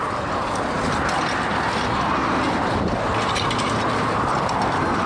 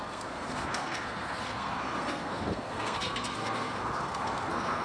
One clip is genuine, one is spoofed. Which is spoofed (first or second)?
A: second